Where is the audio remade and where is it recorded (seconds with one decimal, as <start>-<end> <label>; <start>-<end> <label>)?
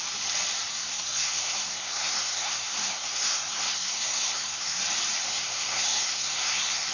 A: 0.0-0.7 recorded; 0.7-4.8 remade; 4.8-5.2 recorded; 5.2-6.9 remade